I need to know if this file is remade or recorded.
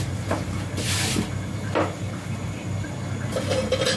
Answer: recorded